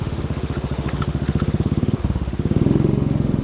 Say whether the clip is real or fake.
fake